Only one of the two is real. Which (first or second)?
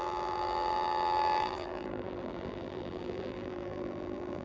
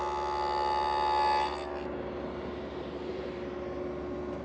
second